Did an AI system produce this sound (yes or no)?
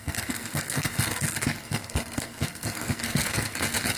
yes